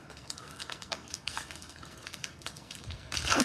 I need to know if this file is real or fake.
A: fake